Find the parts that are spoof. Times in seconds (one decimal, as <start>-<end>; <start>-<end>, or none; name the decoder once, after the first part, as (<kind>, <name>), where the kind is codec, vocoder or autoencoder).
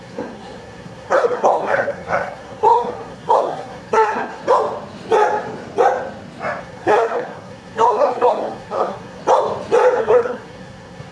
0.0-4.4 (codec, SNAC); 6.6-9.2; 10.0-11.1